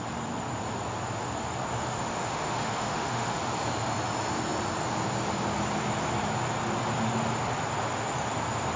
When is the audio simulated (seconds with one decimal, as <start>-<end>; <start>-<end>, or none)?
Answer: 1.8-3.4